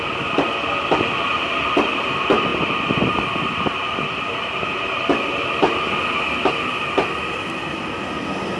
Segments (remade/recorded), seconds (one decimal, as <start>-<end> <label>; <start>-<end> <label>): 0.0-8.6 recorded